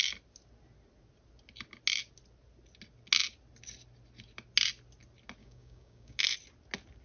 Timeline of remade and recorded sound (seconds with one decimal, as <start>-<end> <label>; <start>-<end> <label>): 0.0-5.4 recorded; 5.4-6.2 remade; 6.2-7.0 recorded